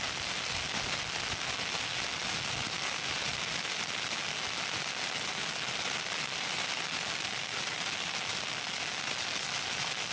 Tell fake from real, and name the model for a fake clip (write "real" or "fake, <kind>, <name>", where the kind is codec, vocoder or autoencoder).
real